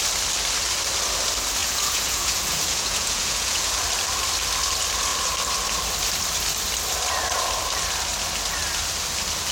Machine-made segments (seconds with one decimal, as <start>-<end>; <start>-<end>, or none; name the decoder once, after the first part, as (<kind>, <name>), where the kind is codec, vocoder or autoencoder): 1.6-3.8 (vocoder, Vocos)